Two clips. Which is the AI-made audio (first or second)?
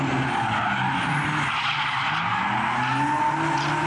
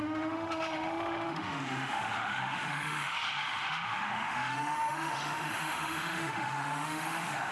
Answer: second